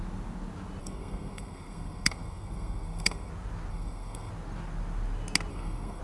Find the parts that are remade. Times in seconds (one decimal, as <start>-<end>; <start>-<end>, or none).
0.8-3.3; 3.7-4.3; 5.5-6.0